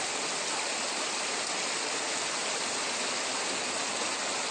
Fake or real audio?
real